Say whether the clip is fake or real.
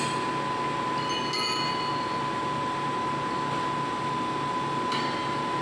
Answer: real